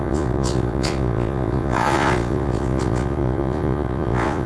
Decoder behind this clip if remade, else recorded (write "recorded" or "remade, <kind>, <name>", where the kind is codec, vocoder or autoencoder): remade, vocoder, Vocos